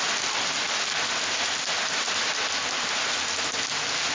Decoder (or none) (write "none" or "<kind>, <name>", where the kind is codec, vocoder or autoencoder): none